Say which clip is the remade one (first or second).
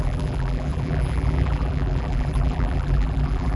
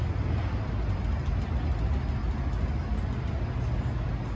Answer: first